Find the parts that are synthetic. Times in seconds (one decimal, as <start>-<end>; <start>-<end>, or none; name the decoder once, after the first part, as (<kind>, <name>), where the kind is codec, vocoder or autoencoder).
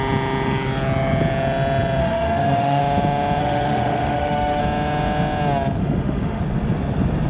2.0-2.8 (autoencoder, DAC-VAE); 3.4-4.6; 5.8-6.4